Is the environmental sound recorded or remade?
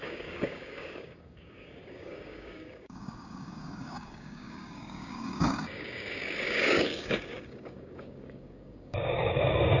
remade